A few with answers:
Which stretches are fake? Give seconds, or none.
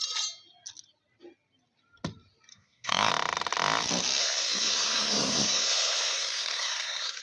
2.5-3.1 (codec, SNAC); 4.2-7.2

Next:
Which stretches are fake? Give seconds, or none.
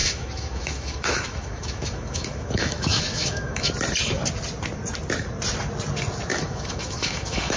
0.0-3.7 (autoencoder, DAC-VAE); 6.3-7.6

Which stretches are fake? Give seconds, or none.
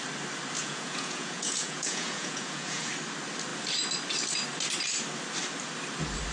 0.6-2.9 (vocoder, Vocos)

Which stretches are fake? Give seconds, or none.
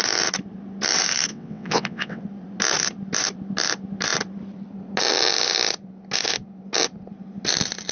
1.3-2.2 (vocoder, WaveNeXt)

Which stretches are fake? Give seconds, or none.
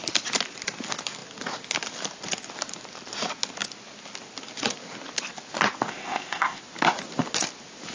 5.9-6.6 (codec, ZipCodec)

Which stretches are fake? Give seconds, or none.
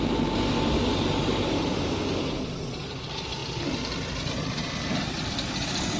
4.9-5.4 (vocoder, BigVGAN v2)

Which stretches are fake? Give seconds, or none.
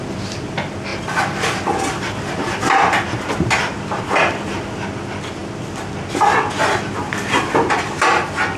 none